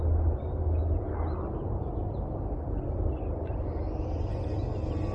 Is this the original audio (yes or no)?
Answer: yes